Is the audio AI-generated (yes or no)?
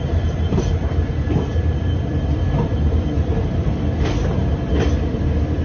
yes